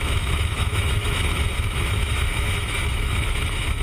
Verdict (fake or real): fake